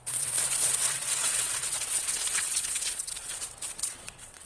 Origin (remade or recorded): remade